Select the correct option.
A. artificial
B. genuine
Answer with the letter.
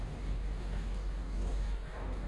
A